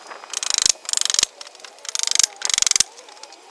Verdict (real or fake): real